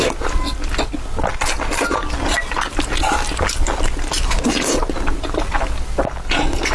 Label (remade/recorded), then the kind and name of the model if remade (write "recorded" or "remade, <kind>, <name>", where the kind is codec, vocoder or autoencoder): recorded